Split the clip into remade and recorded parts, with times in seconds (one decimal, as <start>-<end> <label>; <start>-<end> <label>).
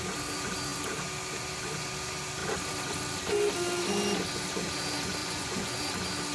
0.0-5.2 recorded; 5.2-5.8 remade; 5.8-6.3 recorded